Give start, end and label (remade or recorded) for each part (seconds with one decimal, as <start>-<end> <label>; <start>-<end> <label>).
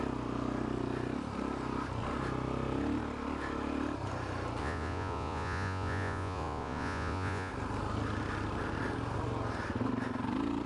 0.0-4.6 recorded; 4.6-7.5 remade; 7.5-10.7 recorded